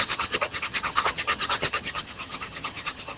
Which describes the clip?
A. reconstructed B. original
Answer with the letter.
A